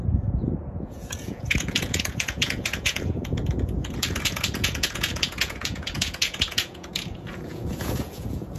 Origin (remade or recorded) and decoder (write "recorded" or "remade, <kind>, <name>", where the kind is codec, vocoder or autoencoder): remade, vocoder, Vocos